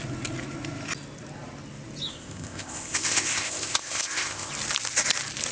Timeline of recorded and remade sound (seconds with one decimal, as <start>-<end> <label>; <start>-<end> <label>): 0.0-2.1 recorded; 2.1-4.5 remade; 4.5-5.5 recorded